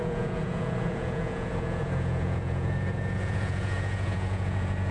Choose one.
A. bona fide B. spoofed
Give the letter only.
B